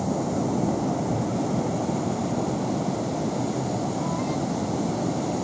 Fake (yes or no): no